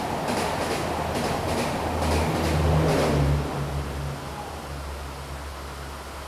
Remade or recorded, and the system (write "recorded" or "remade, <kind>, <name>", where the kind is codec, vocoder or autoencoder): recorded